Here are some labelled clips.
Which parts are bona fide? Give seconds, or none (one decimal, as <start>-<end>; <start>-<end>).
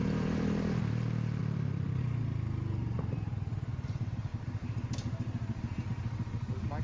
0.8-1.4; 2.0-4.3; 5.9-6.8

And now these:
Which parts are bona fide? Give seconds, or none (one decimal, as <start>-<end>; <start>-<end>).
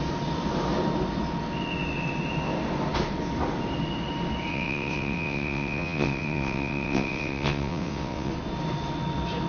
0.0-4.5; 8.3-9.5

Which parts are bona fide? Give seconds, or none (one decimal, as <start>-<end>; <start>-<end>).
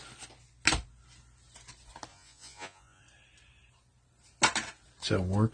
0.0-2.1; 3.0-5.5